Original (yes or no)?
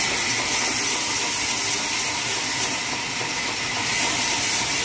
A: yes